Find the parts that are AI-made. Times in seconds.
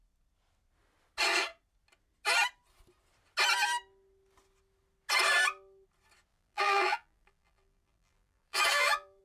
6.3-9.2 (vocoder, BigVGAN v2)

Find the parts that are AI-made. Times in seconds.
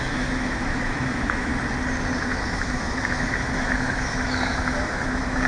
0.0-1.5 (autoencoder, DAC-VAE); 2.2-5.5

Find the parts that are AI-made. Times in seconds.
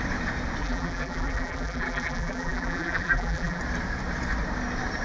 0.6-3.6 (vocoder, BigVGAN v2)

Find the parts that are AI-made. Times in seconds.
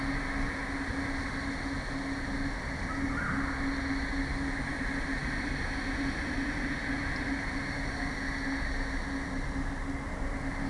none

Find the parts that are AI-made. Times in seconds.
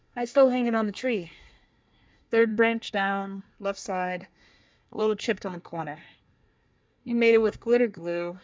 0.0-8.4 (codec, SNAC)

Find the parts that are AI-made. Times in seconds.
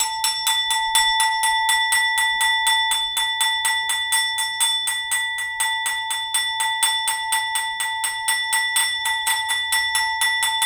8.8-9.5 (vocoder, BigVGAN v2)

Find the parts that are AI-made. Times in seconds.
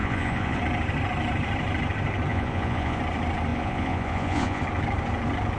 0.0-0.6 (vocoder, Vocos); 2.3-3.0; 3.5-4.6